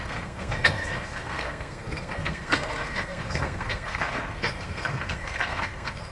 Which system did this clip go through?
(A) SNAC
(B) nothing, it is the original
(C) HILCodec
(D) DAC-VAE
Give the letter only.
A